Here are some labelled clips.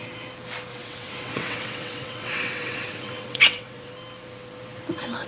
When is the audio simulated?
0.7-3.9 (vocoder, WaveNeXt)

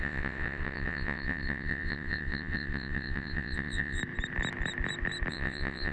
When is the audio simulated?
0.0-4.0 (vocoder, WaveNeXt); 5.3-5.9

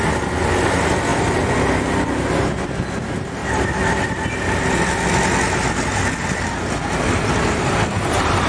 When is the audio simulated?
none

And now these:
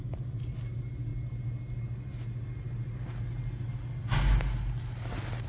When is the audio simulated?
none